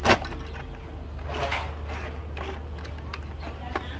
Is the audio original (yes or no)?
yes